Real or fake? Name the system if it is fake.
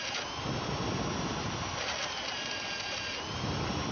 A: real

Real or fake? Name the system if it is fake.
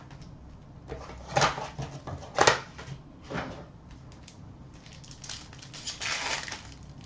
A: real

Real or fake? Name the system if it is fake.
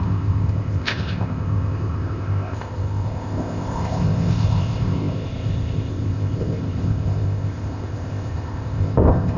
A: fake, codec, ZipCodec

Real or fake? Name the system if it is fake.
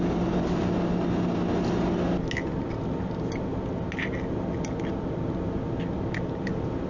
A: real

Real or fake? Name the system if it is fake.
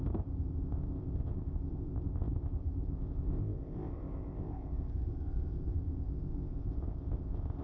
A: fake, codec, ZipCodec